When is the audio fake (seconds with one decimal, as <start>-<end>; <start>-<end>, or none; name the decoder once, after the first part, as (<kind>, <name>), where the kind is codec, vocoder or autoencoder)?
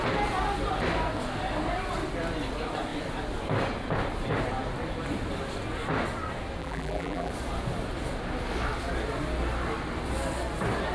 6.6-7.3 (vocoder, BigVGAN v2)